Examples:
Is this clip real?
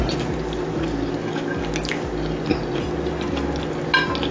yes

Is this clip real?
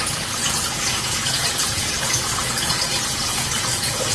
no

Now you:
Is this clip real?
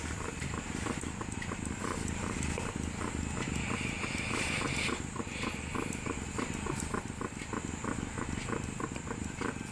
yes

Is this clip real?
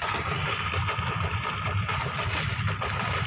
yes